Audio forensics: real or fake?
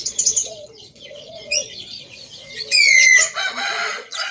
fake